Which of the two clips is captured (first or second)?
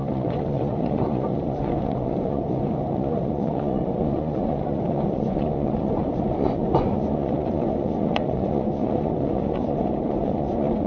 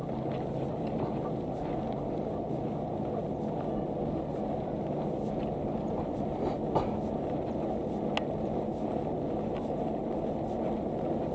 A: second